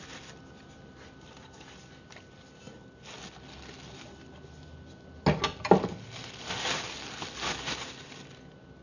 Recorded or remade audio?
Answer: recorded